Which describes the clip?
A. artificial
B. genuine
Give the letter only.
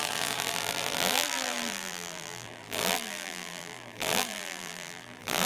A